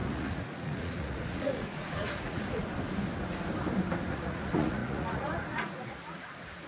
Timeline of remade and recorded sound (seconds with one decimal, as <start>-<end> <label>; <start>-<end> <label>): 0.0-2.6 remade; 2.6-4.1 recorded; 4.1-6.7 remade